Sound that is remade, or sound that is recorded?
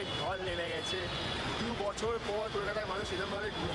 remade